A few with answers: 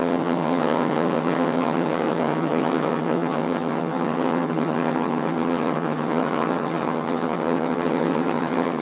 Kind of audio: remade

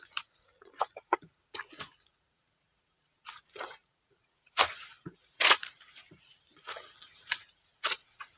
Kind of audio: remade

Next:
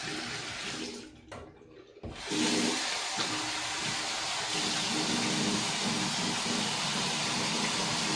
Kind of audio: recorded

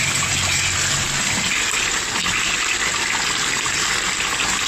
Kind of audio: recorded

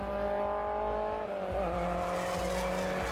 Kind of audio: recorded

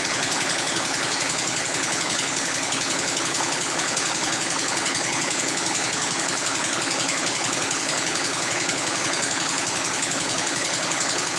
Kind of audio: remade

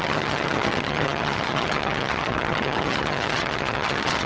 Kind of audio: remade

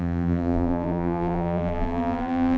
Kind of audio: remade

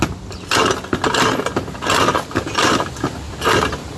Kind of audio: recorded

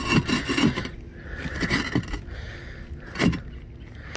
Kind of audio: recorded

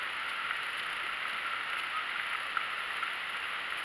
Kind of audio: recorded